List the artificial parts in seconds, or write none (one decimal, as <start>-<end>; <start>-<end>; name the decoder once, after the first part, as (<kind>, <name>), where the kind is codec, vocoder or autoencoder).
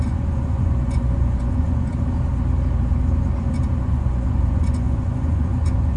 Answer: 0.0-1.9 (vocoder, Vocos); 3.8-6.0